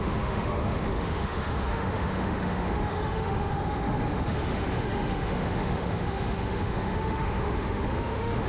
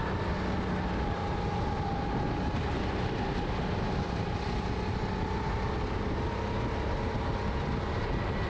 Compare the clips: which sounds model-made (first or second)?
first